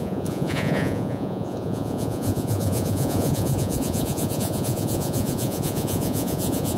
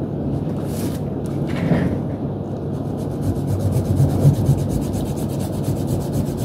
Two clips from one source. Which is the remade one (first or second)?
first